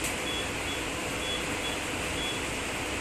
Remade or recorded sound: remade